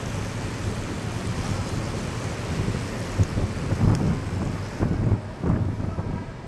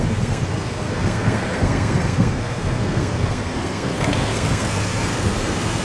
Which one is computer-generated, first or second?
second